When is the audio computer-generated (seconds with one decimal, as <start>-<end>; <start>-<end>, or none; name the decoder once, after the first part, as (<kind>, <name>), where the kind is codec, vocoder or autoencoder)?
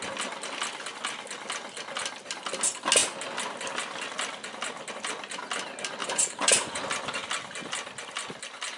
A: 6.0-6.8 (vocoder, Vocos)